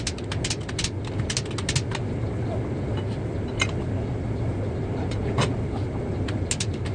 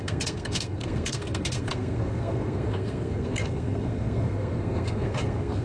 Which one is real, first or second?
first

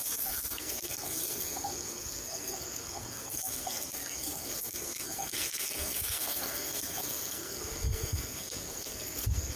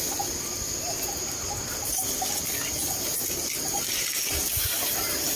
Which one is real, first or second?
second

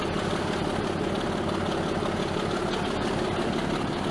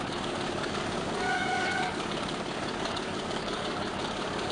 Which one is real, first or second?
first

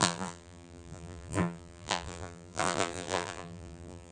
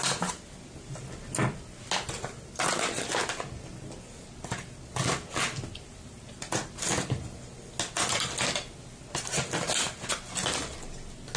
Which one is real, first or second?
second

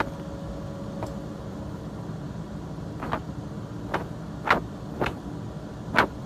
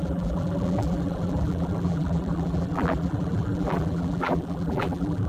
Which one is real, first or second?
first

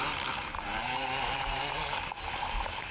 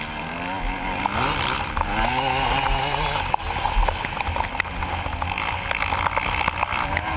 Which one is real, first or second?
second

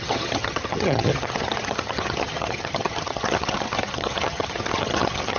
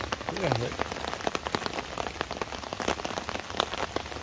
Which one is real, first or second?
second